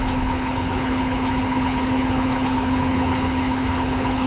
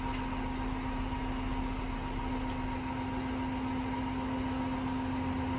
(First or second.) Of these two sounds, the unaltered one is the second